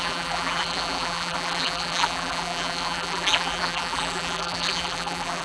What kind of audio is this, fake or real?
fake